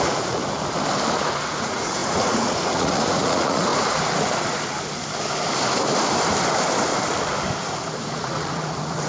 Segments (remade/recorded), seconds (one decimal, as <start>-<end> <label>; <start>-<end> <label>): 0.0-0.4 remade; 0.4-1.1 recorded; 1.1-3.7 remade; 3.7-7.6 recorded; 7.6-9.1 remade